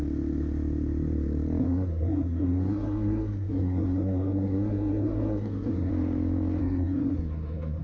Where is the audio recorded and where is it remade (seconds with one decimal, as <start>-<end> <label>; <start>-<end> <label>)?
0.0-1.6 recorded; 1.6-5.9 remade; 5.9-6.6 recorded; 6.6-7.8 remade